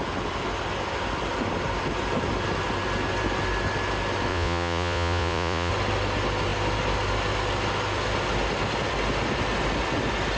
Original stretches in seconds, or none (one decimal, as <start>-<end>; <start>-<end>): 0.0-4.3; 5.7-10.4